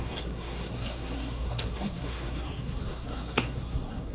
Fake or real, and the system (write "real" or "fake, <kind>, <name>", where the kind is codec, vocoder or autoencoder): fake, codec, SNAC